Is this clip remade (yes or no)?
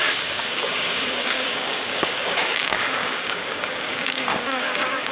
yes